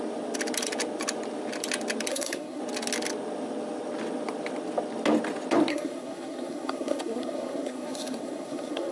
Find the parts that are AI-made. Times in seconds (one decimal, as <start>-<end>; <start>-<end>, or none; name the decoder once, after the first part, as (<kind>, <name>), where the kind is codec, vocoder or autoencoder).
2.1-2.6 (codec, SNAC); 5.7-8.9